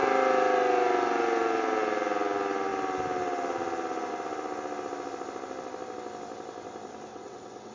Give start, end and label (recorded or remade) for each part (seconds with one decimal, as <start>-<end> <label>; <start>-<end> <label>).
0.0-7.1 recorded; 7.1-7.7 remade